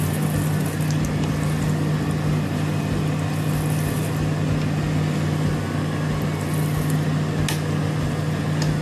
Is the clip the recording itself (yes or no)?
yes